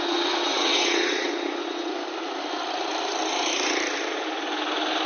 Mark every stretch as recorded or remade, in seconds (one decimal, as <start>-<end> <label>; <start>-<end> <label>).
0.0-1.9 remade; 1.9-5.1 recorded